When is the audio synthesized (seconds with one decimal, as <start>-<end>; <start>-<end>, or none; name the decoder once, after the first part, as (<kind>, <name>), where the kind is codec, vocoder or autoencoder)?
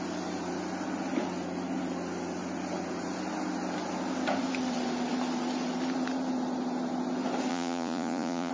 7.5-8.5 (vocoder, Vocos)